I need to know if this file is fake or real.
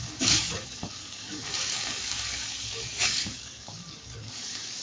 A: fake